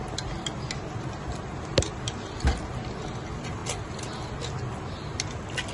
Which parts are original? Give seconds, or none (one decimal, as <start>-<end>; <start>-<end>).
0.0-5.7